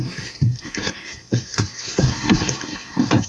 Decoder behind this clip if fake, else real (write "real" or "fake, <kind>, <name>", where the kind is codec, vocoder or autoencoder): fake, codec, SNAC